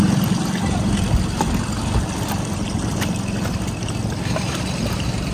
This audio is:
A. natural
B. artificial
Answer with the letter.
A